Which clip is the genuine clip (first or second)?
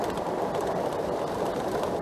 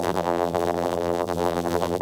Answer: first